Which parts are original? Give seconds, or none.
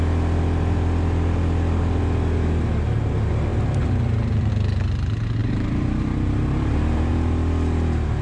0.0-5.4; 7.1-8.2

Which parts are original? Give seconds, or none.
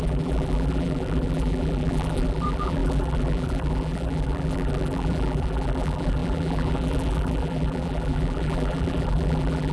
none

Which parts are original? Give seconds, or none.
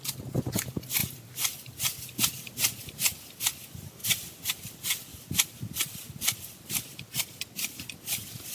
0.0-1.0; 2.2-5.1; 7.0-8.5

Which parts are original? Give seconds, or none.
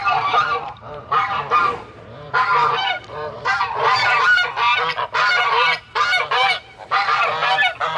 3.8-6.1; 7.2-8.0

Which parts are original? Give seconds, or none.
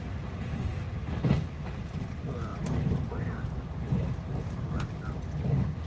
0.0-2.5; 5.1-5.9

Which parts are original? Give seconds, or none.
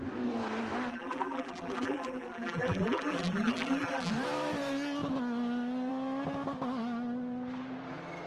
0.0-0.9; 4.1-8.3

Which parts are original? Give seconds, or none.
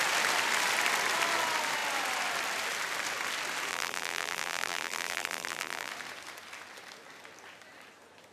0.0-3.7; 5.9-8.3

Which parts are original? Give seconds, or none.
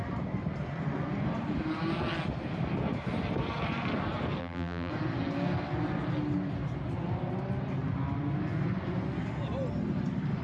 0.0-4.4; 4.9-10.4